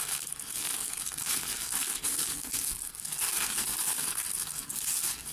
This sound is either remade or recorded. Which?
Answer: remade